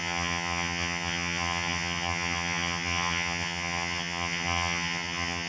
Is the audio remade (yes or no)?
yes